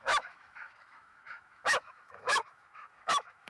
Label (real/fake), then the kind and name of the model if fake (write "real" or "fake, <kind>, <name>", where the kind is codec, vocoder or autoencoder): fake, autoencoder, DAC-VAE